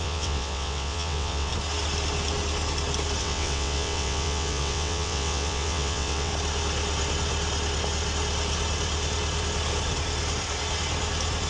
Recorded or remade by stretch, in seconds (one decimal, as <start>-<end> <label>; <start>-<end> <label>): 0.0-1.5 remade; 1.5-3.2 recorded; 3.2-6.3 remade; 6.3-11.5 recorded